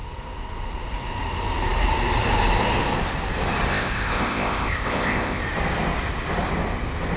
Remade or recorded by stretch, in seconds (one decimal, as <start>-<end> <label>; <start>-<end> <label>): 0.0-3.7 recorded; 3.7-5.4 remade; 5.4-7.2 recorded